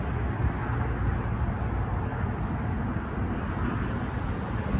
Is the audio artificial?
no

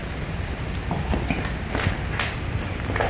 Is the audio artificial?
no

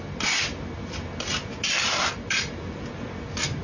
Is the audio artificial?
no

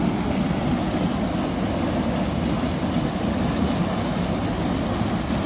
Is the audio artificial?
no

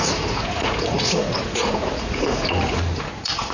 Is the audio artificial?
yes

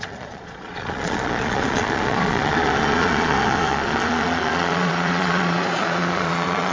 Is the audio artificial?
yes